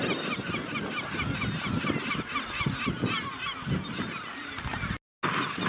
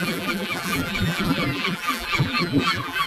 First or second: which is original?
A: first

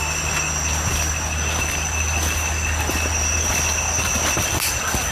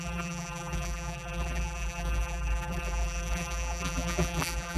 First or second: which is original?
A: first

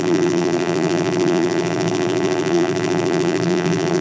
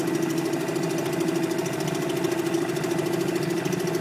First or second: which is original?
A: second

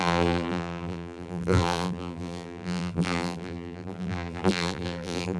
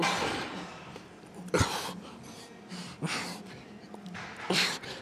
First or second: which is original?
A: second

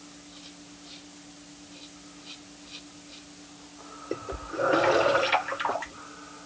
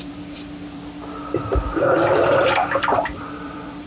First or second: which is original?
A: first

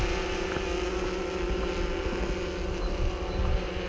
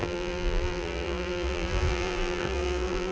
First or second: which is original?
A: first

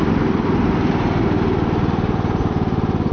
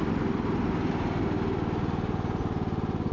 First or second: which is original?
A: second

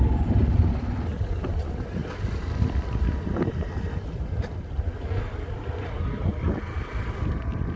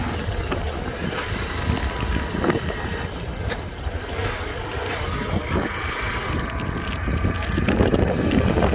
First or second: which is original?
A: second